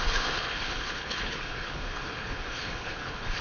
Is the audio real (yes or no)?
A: no